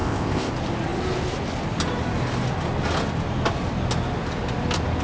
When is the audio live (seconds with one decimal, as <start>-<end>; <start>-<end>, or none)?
0.5-5.0